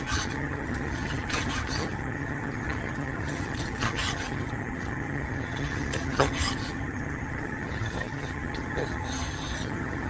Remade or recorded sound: remade